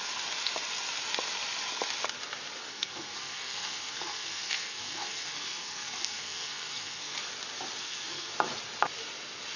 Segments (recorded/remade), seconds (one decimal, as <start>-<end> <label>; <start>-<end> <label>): 0.0-2.7 recorded; 2.7-7.2 remade; 7.2-7.8 recorded; 7.8-8.3 remade; 8.3-9.6 recorded